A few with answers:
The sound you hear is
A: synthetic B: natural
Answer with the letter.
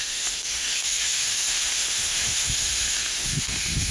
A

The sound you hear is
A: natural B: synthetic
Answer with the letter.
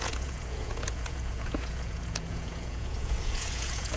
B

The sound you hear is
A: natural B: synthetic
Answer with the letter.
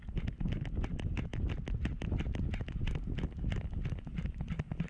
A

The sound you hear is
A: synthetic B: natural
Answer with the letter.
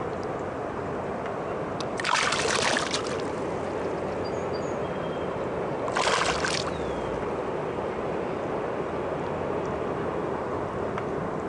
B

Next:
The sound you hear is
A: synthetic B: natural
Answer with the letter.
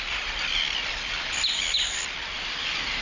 B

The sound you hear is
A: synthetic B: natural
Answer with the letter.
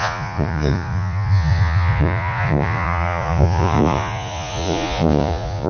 A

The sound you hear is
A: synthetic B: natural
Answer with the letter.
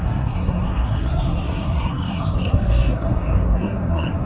A